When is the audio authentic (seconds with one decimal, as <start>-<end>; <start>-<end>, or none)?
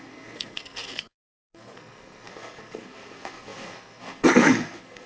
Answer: none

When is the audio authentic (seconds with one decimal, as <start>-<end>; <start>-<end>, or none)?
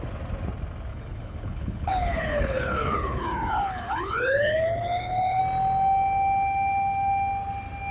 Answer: 0.0-0.9; 5.4-7.9